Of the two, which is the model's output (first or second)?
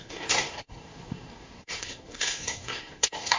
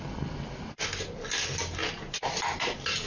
first